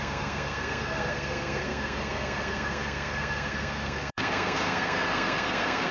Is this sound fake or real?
fake